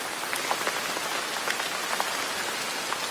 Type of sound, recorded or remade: recorded